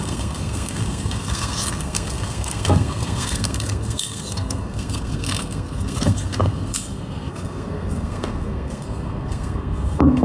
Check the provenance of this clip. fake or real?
fake